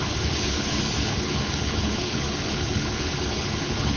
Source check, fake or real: fake